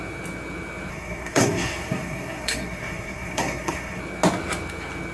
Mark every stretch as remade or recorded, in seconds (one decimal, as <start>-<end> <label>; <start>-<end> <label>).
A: 0.0-0.9 recorded; 0.9-4.0 remade; 4.0-5.1 recorded